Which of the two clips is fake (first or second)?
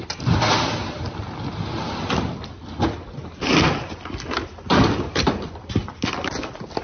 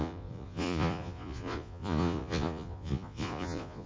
second